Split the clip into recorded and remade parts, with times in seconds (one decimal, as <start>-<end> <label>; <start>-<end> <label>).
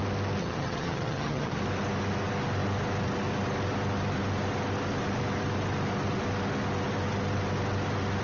0.0-0.4 recorded; 0.4-1.6 remade; 1.6-8.2 recorded